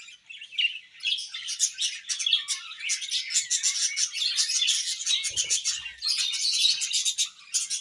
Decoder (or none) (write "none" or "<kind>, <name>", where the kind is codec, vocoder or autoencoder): none